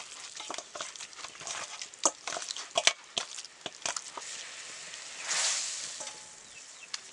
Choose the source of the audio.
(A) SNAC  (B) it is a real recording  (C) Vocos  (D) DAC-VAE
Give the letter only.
B